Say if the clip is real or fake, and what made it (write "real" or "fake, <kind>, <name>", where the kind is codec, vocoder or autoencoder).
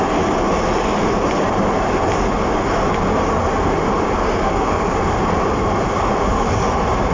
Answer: real